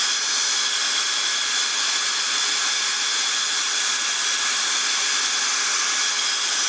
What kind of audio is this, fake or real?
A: real